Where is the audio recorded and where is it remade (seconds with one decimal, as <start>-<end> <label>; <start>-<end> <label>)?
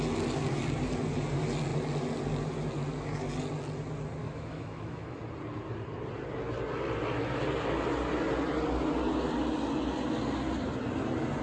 0.0-4.2 recorded; 4.2-5.2 remade; 5.2-11.4 recorded